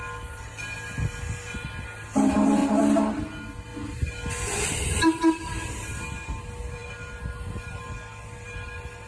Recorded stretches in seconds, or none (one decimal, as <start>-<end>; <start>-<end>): 0.0-9.1